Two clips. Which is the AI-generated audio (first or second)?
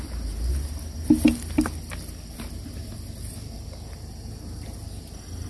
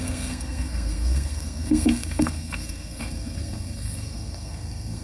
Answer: second